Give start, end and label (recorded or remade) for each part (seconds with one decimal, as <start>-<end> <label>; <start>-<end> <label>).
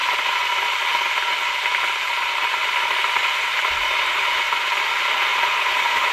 0.0-0.5 remade; 0.5-3.2 recorded; 3.2-4.7 remade; 4.7-5.3 recorded; 5.3-6.1 remade